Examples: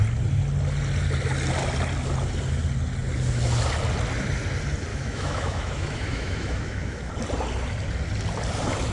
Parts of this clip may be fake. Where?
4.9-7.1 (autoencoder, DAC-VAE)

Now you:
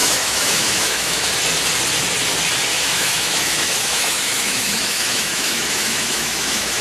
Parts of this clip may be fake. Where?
0.0-1.3 (autoencoder, DAC-VAE); 2.7-6.8

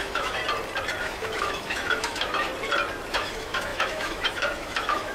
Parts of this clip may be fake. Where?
0.0-0.4 (autoencoder, DAC-VAE); 1.0-2.5; 3.1-5.1

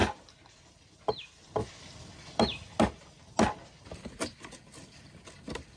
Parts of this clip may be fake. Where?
none

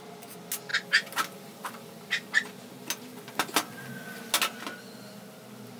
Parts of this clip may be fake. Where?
none

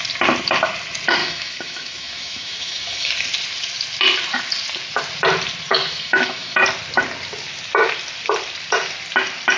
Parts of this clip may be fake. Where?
1.2-3.1 (autoencoder, DAC-VAE); 5.7-6.6